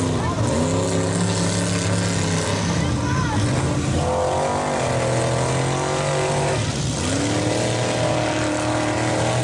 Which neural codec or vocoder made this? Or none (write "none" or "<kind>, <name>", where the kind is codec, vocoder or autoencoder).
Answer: none